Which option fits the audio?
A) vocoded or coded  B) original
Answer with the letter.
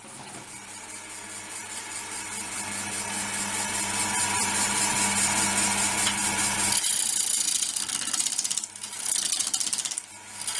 B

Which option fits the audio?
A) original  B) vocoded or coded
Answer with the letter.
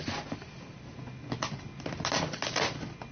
A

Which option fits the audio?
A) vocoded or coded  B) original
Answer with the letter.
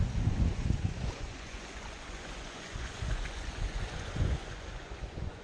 A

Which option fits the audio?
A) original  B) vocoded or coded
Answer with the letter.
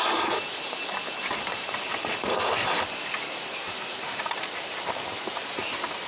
B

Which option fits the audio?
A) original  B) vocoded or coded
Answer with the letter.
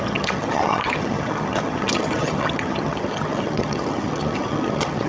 B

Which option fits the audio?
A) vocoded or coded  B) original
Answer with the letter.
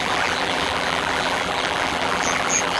A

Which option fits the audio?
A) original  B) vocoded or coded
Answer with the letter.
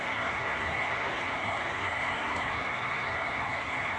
B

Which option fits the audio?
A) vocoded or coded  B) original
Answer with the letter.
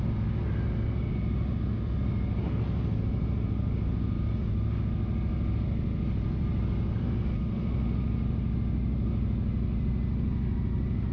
B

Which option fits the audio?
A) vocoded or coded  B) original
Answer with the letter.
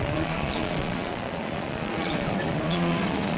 A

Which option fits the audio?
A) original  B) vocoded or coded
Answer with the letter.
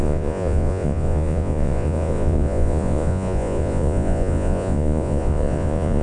B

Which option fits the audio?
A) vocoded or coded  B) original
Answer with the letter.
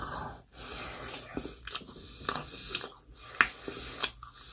B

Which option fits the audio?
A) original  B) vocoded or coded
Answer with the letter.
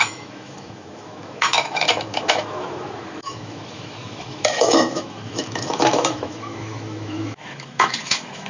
B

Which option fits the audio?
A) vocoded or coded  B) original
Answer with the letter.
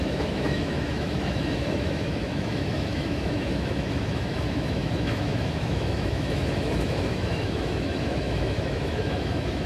A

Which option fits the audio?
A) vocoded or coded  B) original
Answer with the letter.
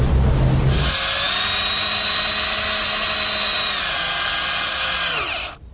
B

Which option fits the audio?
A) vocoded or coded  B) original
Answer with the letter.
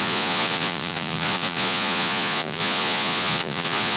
A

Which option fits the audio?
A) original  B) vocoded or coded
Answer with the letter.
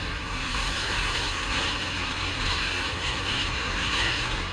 B